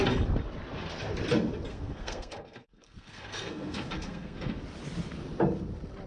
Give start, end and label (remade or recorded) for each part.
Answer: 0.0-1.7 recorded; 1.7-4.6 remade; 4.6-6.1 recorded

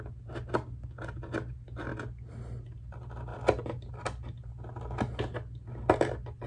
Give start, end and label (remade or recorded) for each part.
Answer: 0.0-6.5 recorded

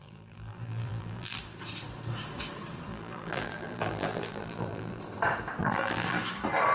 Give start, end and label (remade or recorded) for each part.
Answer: 0.0-1.4 remade; 1.4-2.9 recorded; 2.9-5.0 remade; 5.0-5.6 recorded; 5.6-6.2 remade; 6.2-6.7 recorded

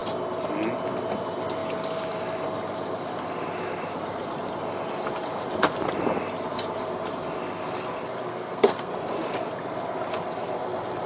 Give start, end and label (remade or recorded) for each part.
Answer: 0.0-8.3 recorded; 8.3-8.9 remade; 8.9-11.1 recorded

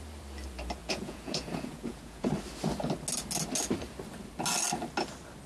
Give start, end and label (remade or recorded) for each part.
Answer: 0.0-0.8 recorded; 0.8-2.3 remade; 2.3-5.5 recorded

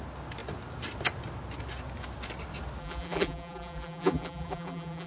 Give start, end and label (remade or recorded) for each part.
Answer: 0.0-2.8 recorded; 2.8-5.1 remade